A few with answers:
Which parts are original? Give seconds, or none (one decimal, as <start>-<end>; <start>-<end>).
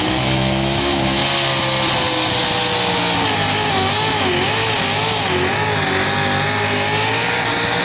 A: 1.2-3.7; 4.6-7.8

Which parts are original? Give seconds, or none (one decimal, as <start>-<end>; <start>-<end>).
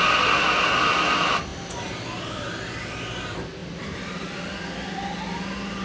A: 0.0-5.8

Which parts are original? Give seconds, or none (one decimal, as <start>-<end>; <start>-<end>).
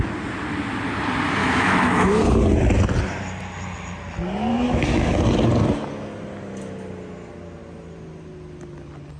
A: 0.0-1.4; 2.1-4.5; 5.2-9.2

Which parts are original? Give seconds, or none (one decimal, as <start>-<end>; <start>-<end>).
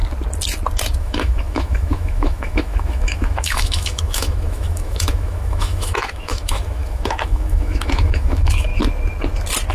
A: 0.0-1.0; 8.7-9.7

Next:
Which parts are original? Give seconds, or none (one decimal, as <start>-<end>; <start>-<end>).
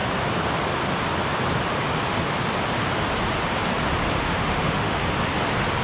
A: 0.0-4.2; 5.0-5.8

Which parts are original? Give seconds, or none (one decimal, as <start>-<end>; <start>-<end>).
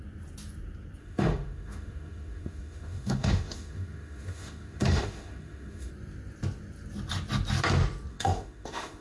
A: 0.0-1.0; 5.9-8.1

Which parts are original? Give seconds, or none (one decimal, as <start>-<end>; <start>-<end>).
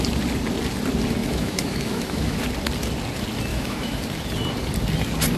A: 0.0-1.2; 2.4-3.5; 4.0-5.4